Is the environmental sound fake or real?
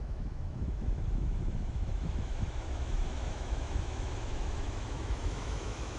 fake